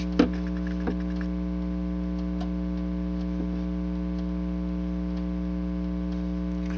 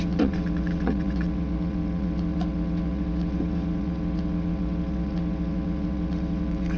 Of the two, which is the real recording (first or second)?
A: first